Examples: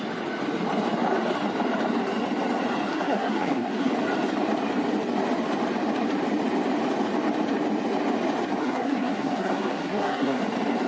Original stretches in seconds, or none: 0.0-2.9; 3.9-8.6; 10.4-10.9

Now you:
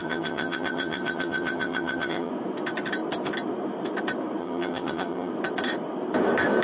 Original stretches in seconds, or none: 2.3-4.4; 5.3-6.6

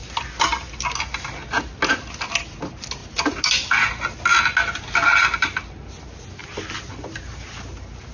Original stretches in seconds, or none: 0.0-8.1

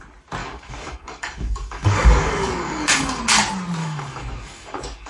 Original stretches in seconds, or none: 0.0-0.4; 3.2-3.8

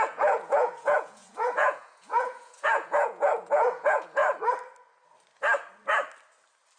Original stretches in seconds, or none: 4.2-6.8